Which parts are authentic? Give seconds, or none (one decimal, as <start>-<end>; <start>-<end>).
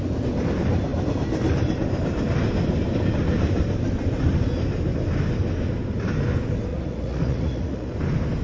0.0-6.7; 7.9-8.4